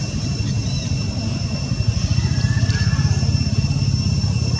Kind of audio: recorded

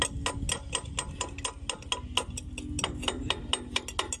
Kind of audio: recorded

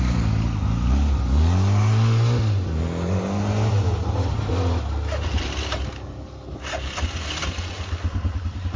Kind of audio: recorded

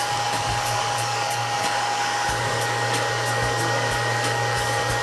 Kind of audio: remade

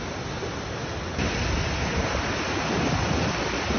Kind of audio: recorded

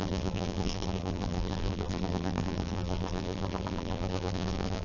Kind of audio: remade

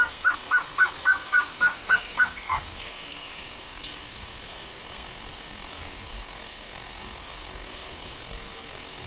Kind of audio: remade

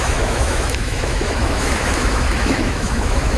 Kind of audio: remade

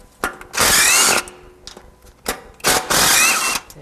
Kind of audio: recorded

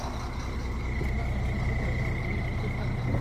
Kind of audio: recorded